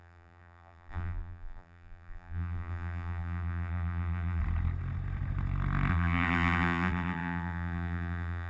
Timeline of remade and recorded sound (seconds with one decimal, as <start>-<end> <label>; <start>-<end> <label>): 0.0-4.4 remade; 4.4-5.9 recorded; 5.9-8.5 remade